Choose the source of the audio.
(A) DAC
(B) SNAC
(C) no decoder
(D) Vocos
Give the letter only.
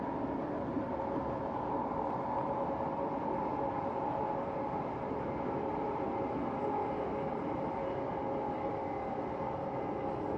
C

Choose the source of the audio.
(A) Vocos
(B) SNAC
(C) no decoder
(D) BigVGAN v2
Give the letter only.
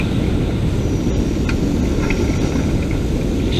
C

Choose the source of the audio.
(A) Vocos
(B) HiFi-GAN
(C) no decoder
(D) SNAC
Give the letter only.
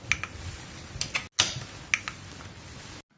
C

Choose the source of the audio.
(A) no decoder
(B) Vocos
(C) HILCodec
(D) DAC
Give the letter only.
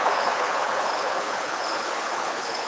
C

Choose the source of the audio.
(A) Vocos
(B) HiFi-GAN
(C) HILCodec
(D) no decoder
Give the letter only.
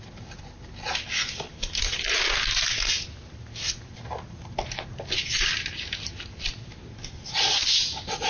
D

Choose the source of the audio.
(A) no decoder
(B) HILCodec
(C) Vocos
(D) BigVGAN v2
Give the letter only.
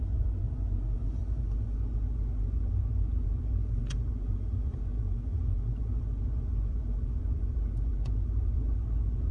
C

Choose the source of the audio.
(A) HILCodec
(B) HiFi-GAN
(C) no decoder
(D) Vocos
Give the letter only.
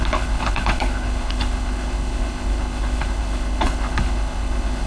A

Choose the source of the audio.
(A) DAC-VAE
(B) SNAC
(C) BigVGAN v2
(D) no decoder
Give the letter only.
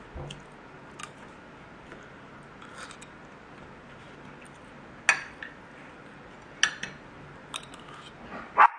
D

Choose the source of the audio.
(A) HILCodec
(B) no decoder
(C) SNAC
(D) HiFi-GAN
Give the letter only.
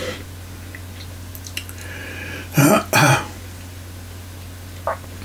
B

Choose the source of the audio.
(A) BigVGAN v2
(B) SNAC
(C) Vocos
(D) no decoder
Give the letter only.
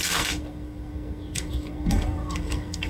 B